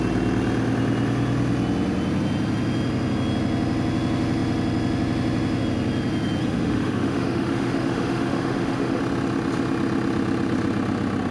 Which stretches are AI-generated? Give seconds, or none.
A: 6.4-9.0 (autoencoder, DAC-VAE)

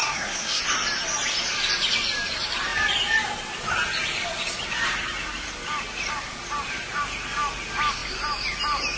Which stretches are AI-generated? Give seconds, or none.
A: 0.0-0.6 (codec, SNAC)

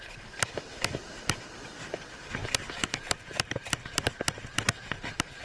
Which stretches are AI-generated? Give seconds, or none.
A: none

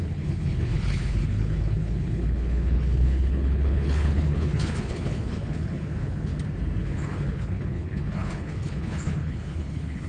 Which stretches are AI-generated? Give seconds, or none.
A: 0.0-6.3 (codec, HILCodec); 6.8-10.1